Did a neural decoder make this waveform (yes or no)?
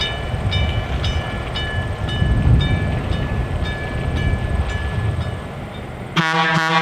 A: no